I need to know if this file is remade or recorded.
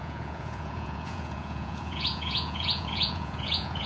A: remade